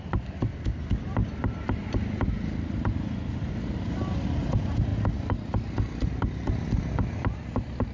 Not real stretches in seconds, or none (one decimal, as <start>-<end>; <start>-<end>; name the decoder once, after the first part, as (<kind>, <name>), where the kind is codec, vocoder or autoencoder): none